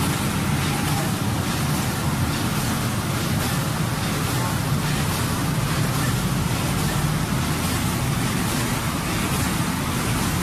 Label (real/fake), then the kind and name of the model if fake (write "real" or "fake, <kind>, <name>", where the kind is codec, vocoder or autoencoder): real